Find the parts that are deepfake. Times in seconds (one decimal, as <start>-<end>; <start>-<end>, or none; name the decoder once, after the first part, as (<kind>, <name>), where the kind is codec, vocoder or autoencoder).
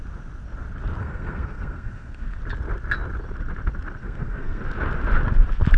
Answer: 1.0-2.4 (codec, SNAC); 4.0-4.6